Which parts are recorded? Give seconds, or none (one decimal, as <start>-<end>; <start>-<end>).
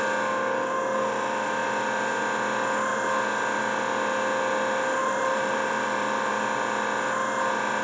0.0-5.0; 6.3-7.8